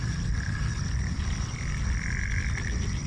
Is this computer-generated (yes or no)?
yes